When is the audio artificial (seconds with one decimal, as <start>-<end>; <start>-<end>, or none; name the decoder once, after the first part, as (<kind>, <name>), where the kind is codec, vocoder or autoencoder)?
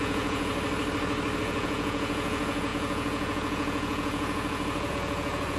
0.0-0.5 (vocoder, Vocos); 1.4-5.6